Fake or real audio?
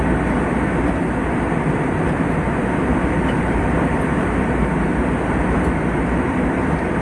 real